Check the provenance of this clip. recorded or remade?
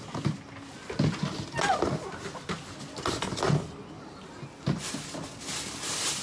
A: recorded